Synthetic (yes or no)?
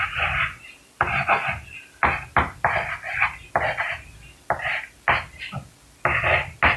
no